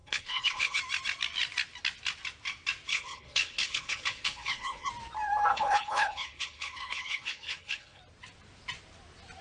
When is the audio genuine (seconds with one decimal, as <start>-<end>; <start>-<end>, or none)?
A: 0.8-2.9; 4.9-5.5; 8.0-9.4